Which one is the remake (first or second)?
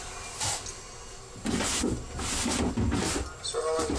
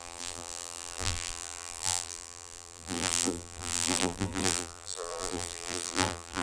second